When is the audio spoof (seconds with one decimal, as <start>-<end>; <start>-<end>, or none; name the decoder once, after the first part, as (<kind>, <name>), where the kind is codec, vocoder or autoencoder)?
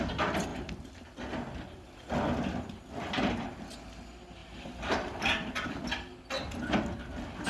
4.4-5.8 (vocoder, BigVGAN v2)